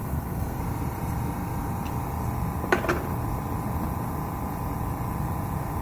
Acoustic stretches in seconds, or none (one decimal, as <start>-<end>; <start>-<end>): 0.6-5.8